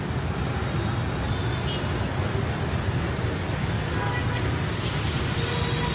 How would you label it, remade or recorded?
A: recorded